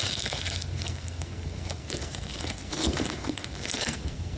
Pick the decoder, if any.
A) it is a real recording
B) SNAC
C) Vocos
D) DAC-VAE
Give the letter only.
B